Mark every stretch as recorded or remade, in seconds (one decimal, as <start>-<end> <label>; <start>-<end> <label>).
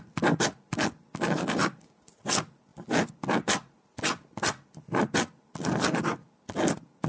0.0-7.1 recorded